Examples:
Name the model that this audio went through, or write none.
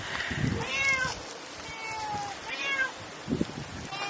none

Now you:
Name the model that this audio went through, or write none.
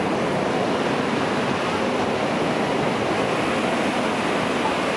none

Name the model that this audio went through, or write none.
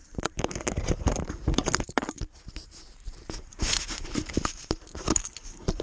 vocoder, BigVGAN v2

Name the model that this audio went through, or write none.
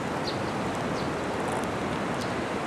none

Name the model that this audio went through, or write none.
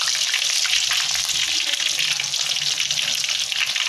none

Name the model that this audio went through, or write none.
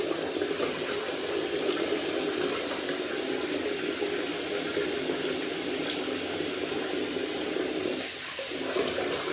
none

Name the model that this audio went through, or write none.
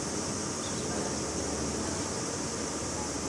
none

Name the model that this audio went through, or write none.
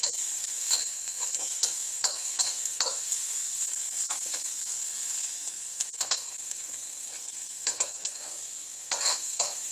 codec, SNAC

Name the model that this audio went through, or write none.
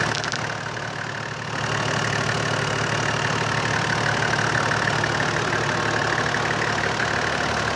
none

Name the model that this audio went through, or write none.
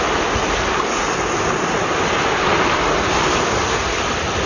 none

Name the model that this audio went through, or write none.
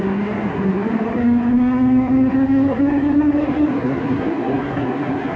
codec, SNAC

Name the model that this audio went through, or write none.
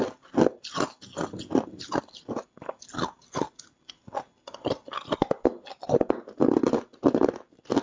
none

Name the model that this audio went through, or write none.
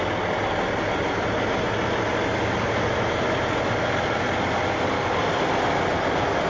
none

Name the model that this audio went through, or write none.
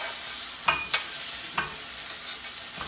none